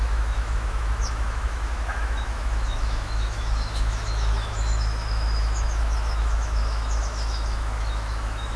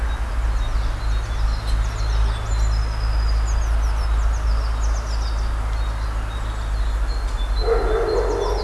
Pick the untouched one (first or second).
second